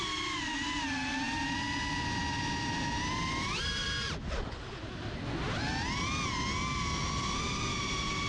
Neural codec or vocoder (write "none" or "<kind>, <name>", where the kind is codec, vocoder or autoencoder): none